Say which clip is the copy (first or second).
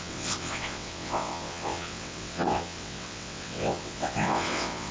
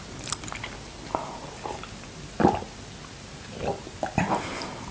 first